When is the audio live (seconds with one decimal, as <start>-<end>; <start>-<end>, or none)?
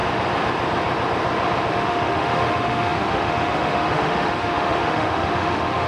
0.0-1.7